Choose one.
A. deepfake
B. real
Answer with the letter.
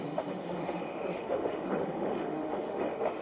A